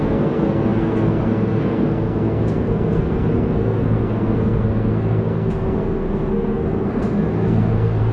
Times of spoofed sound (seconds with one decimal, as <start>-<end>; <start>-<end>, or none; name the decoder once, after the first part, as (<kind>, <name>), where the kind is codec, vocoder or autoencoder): 0.0-8.1 (codec, SNAC)